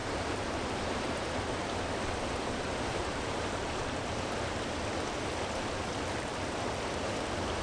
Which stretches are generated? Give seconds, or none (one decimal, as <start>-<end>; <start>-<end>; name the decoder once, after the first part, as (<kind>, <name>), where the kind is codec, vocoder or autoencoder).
0.0-0.6 (vocoder, BigVGAN v2); 3.0-4.8